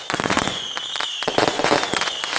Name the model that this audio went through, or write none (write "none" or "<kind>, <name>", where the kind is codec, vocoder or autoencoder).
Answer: vocoder, Vocos